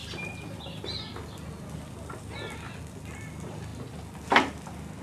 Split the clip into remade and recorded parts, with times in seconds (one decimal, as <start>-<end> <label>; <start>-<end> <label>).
0.0-5.0 recorded

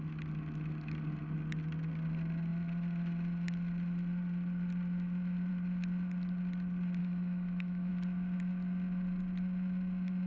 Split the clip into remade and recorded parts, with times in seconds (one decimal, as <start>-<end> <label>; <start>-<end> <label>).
0.0-7.0 recorded; 7.0-7.9 remade; 7.9-10.3 recorded

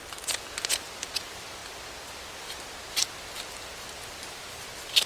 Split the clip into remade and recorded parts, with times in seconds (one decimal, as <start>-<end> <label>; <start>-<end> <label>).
0.0-5.1 recorded

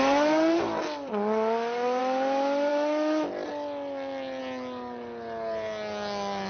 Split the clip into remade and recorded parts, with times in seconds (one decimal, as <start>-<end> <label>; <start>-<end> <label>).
0.0-2.7 recorded; 2.7-3.3 remade; 3.3-6.5 recorded

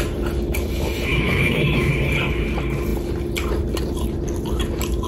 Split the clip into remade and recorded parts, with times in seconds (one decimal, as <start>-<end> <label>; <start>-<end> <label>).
0.0-1.1 recorded; 1.1-1.9 remade; 1.9-5.1 recorded

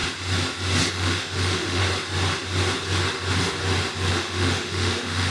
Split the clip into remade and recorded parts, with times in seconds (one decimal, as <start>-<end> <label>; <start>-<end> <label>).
0.0-0.9 recorded; 0.9-1.8 remade; 1.8-4.1 recorded; 4.1-5.3 remade

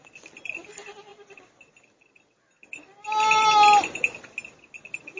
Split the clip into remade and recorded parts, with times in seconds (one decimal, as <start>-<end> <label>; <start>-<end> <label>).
0.0-5.2 recorded